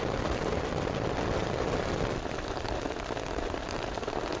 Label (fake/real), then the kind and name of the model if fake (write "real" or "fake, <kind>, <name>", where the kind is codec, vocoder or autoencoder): real